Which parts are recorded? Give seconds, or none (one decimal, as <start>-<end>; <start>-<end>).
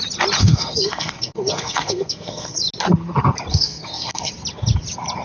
0.0-0.4; 2.6-3.5; 4.3-5.2